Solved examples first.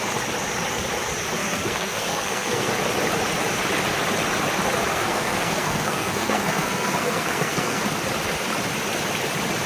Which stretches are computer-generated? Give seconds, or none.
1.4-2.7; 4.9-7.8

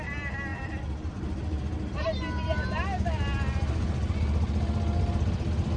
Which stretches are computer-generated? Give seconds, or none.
none

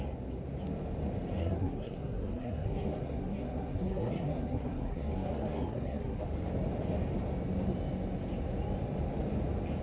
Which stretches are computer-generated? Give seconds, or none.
1.4-6.2

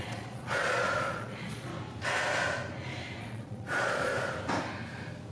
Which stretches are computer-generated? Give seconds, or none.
0.0-1.7; 3.2-4.1

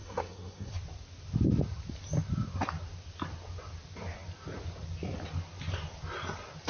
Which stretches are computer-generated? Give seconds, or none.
0.0-0.7